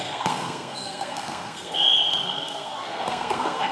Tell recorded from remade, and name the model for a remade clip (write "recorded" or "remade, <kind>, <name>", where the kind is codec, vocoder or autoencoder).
remade, codec, SNAC